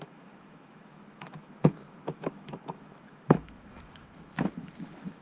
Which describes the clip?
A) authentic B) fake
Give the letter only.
B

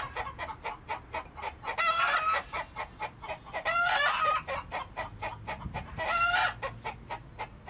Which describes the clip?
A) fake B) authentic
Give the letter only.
B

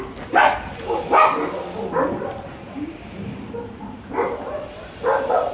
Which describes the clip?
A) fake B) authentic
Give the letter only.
B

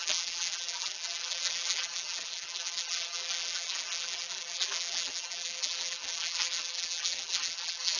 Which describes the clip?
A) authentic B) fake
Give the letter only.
B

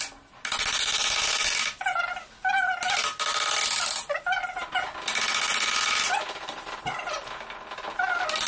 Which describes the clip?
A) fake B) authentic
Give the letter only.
B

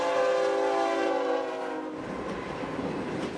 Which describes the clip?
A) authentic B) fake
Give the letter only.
A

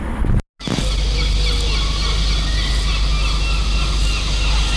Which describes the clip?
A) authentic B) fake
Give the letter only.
A